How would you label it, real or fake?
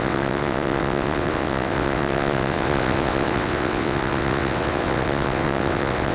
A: fake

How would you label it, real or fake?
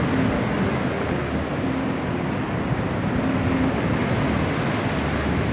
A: real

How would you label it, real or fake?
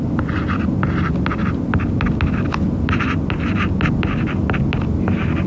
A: real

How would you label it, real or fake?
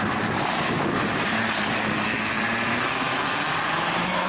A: real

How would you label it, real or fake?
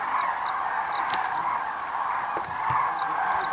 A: real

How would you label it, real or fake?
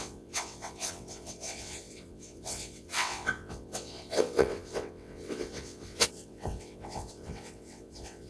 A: fake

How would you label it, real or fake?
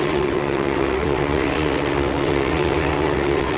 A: fake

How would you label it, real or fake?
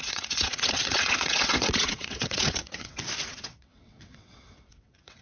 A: fake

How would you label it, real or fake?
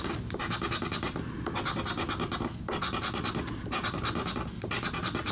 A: real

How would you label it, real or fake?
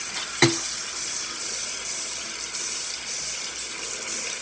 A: real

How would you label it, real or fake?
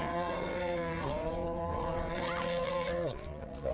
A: fake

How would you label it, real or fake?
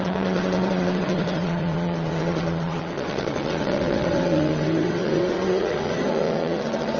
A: fake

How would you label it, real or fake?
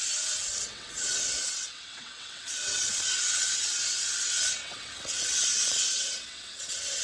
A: fake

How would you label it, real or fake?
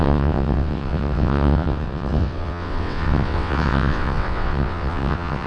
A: fake